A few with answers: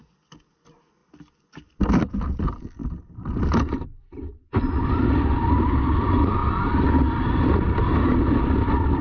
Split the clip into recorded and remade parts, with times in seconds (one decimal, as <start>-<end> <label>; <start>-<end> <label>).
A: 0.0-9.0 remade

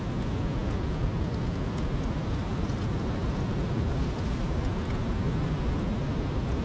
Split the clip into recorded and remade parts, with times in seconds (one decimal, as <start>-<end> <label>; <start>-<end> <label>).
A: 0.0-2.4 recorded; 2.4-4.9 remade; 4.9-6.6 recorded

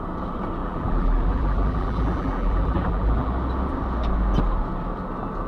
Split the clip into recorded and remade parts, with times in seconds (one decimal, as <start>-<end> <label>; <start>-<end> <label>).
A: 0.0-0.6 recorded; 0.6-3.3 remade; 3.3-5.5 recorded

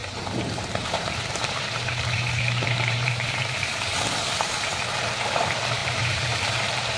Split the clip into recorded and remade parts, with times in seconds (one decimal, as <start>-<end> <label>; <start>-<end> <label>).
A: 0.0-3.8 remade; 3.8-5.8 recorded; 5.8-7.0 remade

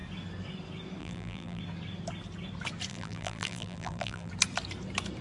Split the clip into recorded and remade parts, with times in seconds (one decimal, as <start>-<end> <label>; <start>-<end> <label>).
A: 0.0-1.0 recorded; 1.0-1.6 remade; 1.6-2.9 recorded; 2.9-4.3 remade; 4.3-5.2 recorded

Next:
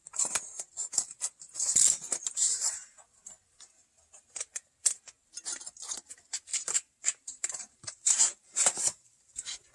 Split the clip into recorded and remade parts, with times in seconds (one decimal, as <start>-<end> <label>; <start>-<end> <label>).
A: 0.0-6.5 recorded; 6.5-9.7 remade

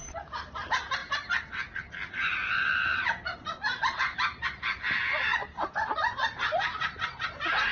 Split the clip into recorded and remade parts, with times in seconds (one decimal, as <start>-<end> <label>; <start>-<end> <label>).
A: 0.0-1.0 remade; 1.0-2.1 recorded; 2.1-7.7 remade

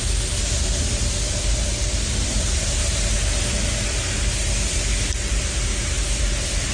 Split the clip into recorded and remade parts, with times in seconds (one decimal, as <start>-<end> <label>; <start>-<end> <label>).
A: 0.0-2.8 remade; 2.8-5.2 recorded; 5.2-5.7 remade; 5.7-6.2 recorded; 6.2-6.7 remade